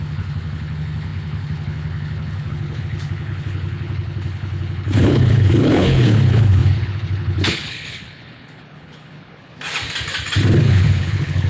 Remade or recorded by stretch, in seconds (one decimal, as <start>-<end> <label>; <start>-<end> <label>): 0.0-9.5 remade; 9.5-10.7 recorded; 10.7-11.5 remade